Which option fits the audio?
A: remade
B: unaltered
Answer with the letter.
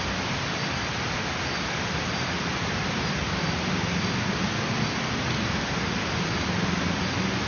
B